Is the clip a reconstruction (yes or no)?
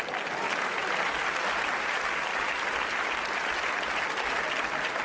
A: no